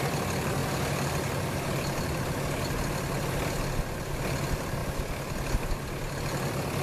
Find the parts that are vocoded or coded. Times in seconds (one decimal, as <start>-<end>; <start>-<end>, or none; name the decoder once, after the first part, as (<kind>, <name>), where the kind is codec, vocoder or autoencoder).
none